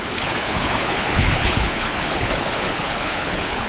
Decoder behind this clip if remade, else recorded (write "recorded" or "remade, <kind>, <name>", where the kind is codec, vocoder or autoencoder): remade, codec, HILCodec